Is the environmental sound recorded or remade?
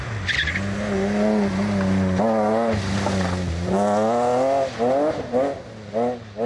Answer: recorded